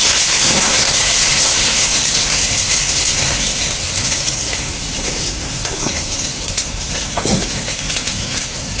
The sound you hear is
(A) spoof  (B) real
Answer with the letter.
A